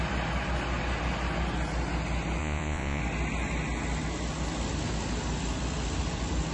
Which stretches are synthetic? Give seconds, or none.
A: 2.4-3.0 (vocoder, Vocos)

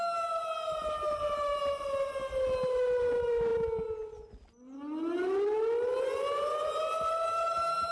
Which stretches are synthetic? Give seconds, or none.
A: none